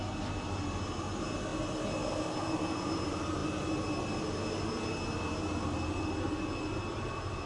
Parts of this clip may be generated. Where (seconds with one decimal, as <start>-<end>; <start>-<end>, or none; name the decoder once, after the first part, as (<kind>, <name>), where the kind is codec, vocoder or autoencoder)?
none